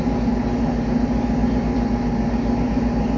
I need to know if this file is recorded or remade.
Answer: recorded